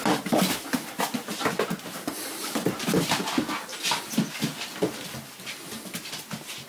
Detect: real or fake real